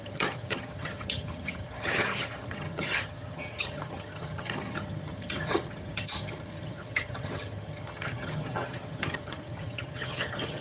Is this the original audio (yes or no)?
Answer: no